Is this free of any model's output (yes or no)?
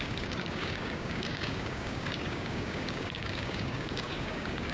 no